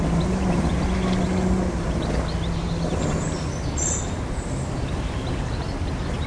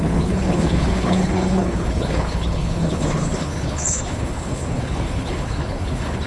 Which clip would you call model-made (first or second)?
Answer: second